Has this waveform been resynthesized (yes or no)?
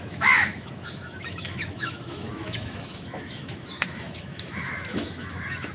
yes